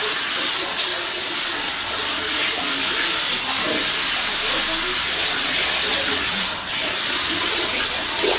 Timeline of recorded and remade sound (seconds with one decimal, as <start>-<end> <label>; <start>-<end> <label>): 0.0-2.7 remade; 2.7-5.2 recorded; 5.2-8.4 remade